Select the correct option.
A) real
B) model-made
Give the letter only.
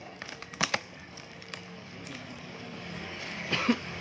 B